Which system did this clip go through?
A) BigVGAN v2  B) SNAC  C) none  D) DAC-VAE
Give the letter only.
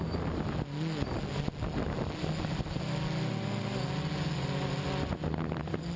C